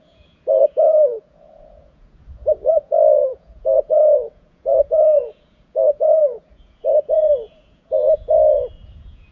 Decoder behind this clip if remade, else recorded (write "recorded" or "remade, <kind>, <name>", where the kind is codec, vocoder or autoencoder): remade, vocoder, Vocos